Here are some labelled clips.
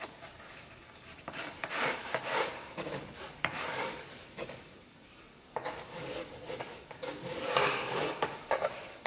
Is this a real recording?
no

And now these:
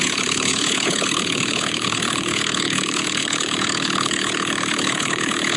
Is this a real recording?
no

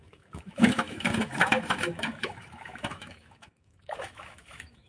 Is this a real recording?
no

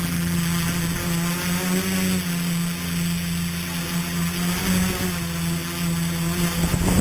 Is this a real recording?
yes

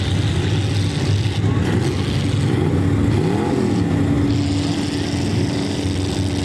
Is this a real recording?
yes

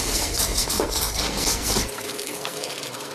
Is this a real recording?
no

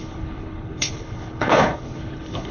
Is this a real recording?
no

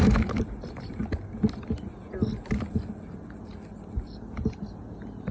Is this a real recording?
yes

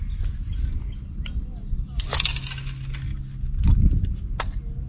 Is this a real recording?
yes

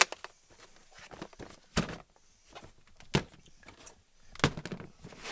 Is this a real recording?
yes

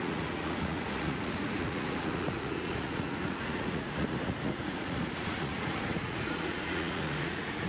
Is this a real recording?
no